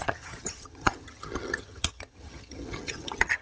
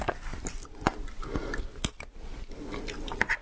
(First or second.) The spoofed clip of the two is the first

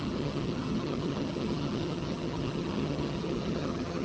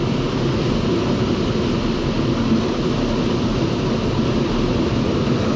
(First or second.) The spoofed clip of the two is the first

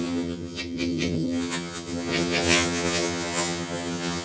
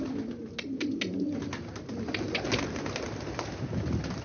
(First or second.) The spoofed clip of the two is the first